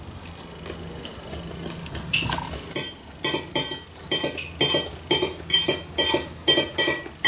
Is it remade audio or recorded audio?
recorded